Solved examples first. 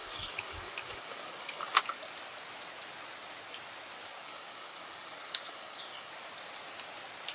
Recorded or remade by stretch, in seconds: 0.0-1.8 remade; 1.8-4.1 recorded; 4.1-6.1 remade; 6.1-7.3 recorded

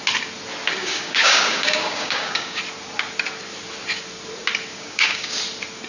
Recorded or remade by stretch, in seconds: 0.0-0.8 recorded; 0.8-2.6 remade; 2.6-4.7 recorded; 4.7-5.4 remade; 5.4-5.9 recorded

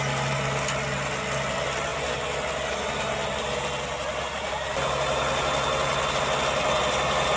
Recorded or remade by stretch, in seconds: 0.0-7.4 recorded